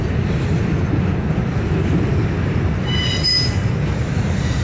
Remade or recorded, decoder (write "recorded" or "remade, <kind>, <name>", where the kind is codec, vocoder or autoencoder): recorded